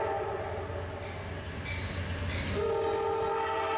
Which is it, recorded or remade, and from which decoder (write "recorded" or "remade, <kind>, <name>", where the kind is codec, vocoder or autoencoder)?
recorded